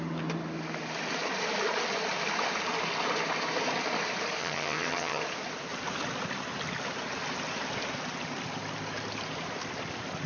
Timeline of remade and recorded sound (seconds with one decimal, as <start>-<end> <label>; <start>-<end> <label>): 0.0-4.4 recorded; 4.4-5.2 remade; 5.2-10.3 recorded